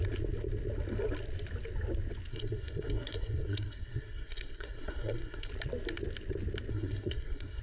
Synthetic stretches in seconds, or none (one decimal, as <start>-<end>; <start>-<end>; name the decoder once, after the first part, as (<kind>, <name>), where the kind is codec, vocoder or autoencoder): 2.3-5.5 (codec, SNAC); 6.7-7.6